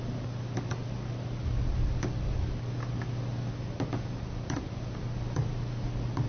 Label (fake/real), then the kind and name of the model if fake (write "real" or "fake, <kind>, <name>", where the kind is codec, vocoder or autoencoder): real